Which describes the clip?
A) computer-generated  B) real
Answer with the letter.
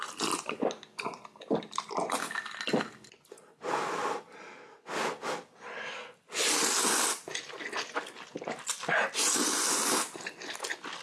B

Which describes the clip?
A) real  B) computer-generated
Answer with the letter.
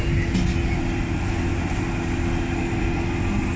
A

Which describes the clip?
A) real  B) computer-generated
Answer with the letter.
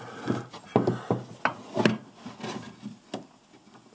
A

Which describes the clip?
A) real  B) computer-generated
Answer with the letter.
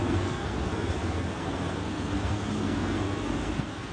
B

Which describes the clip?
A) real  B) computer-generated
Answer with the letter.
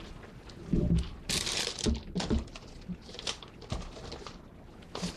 A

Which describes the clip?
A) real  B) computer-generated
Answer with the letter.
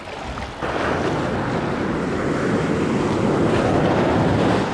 A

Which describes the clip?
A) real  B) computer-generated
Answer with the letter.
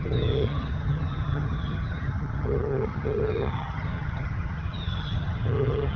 B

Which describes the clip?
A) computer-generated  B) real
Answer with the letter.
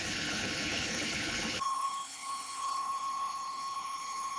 A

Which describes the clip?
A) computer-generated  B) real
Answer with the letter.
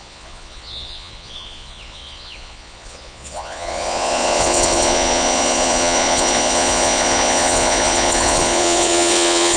A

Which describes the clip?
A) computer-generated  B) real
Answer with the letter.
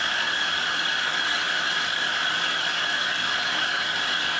A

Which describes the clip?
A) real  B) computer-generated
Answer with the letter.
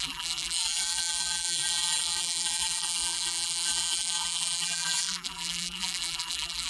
B